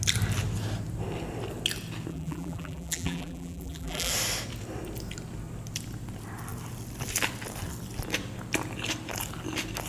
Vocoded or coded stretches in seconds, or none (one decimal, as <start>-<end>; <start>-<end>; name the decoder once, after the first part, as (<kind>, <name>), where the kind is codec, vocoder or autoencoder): 2.1-4.1 (vocoder, BigVGAN v2)